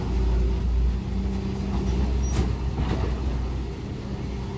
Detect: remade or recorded recorded